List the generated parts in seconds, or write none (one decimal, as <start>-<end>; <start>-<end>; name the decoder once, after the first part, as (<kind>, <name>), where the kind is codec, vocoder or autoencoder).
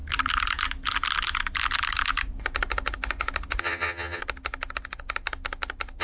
3.6-4.2 (vocoder, HiFi-GAN)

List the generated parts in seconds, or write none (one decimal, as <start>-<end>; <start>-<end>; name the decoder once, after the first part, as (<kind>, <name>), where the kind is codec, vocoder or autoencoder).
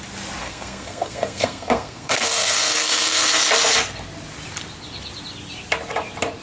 0.4-3.3 (codec, SNAC)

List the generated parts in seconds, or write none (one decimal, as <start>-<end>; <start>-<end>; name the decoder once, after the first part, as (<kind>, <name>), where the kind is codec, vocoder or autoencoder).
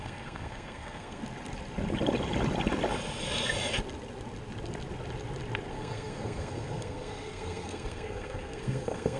0.0-1.2 (codec, SNAC); 5.7-9.2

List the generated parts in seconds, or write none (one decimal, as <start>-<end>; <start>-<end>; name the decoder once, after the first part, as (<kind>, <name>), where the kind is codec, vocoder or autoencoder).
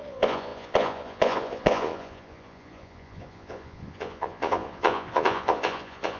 0.0-6.2 (vocoder, Vocos)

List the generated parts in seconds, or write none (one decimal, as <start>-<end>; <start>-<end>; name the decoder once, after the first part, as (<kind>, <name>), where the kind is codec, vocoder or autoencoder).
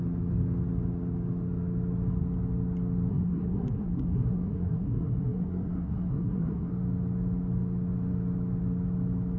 3.1-6.7 (codec, SNAC)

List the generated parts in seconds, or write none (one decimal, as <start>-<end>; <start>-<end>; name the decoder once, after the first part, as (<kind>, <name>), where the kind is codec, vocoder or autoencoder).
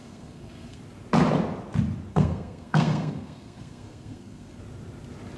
0.0-0.8 (codec, SNAC); 2.1-4.6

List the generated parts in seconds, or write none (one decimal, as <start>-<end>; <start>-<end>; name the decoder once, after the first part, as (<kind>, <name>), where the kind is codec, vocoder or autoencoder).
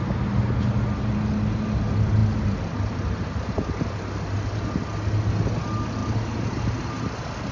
none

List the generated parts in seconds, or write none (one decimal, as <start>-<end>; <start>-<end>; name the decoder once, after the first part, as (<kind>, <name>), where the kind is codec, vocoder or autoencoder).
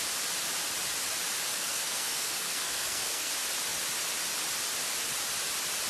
1.5-3.3 (codec, SNAC)